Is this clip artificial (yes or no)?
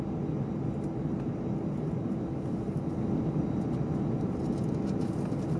no